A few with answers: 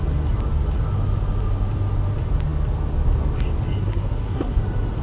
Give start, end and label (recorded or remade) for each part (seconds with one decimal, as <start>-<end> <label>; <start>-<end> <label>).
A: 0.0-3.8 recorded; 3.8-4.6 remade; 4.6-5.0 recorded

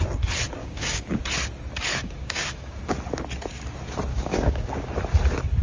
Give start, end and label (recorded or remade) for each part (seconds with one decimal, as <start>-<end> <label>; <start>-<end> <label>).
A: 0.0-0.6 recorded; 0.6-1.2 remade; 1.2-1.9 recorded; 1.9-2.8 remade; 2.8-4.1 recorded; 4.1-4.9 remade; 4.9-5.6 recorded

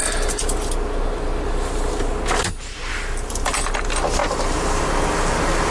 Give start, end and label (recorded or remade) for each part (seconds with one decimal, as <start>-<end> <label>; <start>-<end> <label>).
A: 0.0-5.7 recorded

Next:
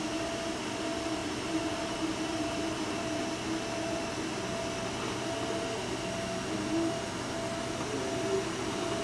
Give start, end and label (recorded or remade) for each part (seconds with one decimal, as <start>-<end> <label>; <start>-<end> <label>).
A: 0.0-1.2 recorded; 1.2-3.2 remade; 3.2-9.0 recorded

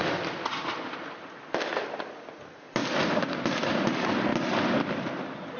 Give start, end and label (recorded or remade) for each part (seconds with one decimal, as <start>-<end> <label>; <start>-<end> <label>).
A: 0.0-5.6 recorded

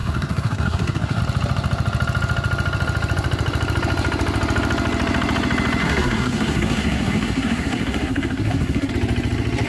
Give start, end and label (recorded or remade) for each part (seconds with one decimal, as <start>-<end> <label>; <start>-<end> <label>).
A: 0.0-1.2 remade; 1.2-5.8 recorded; 5.8-8.9 remade; 8.9-9.7 recorded

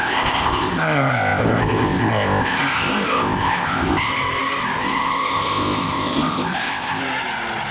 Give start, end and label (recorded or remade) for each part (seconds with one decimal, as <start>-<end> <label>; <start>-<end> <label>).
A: 0.0-4.1 remade; 4.1-4.8 recorded; 4.8-7.0 remade; 7.0-7.7 recorded